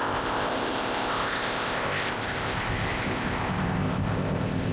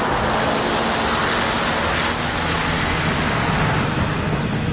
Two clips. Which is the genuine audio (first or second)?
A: second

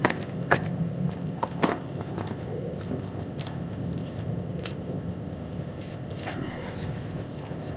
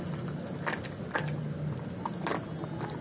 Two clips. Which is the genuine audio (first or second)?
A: second